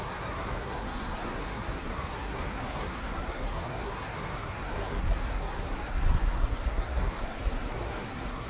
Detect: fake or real fake